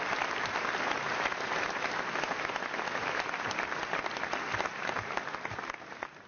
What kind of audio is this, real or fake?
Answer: real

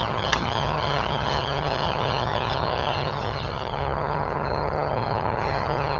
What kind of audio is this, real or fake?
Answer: fake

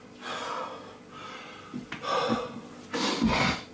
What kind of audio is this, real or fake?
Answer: real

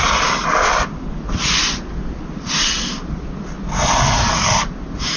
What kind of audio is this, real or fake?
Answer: real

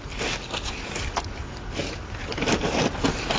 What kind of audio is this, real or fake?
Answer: real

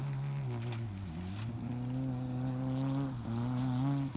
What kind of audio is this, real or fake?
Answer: real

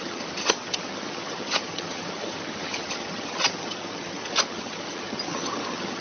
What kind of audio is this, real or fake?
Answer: fake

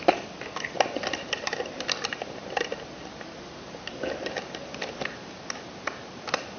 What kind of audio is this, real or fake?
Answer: real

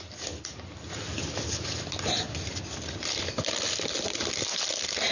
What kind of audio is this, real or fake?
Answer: real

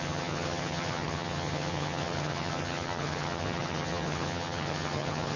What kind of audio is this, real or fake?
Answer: fake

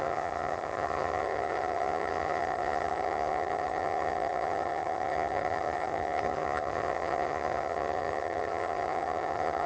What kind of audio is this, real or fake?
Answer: fake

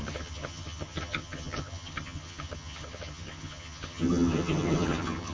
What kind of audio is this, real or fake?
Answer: fake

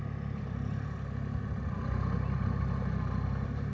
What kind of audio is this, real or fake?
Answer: real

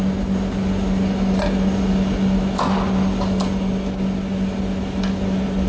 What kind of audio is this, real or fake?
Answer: real